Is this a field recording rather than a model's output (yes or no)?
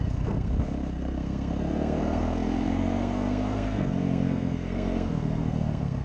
no